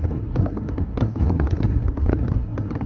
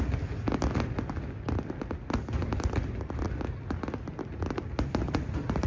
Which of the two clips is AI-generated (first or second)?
first